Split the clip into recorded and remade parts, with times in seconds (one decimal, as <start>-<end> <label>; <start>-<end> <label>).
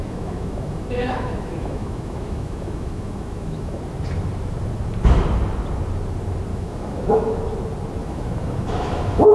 0.0-3.8 remade; 3.8-6.5 recorded; 6.5-7.4 remade; 7.4-8.0 recorded; 8.0-9.3 remade